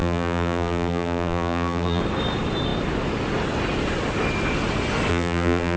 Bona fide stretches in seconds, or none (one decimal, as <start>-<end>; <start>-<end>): 2.0-5.1